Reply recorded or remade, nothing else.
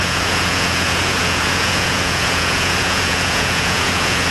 remade